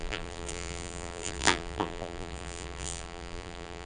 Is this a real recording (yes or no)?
no